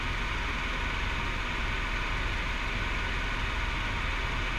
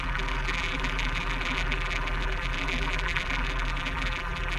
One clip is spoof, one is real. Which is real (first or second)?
first